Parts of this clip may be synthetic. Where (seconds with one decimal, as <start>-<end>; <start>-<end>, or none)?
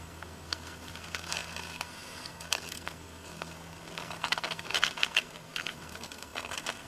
0.0-6.9